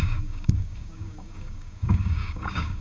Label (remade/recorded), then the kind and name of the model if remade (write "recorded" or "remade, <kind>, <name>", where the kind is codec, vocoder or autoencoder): remade, codec, DAC